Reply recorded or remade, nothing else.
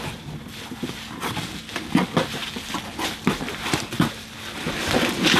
recorded